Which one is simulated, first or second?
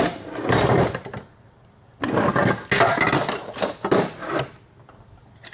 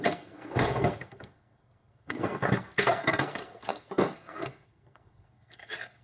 second